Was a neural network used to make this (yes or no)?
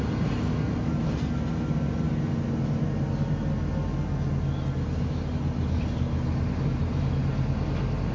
no